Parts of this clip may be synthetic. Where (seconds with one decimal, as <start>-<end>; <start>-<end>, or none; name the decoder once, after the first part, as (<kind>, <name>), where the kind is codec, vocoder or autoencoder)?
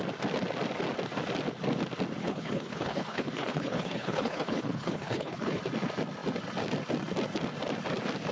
2.2-5.6 (codec, HILCodec)